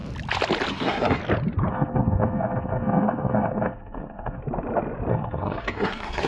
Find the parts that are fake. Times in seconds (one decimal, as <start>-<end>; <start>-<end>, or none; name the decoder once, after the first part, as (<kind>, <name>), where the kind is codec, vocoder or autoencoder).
0.7-1.2 (codec, SNAC); 1.7-4.4; 5.1-6.3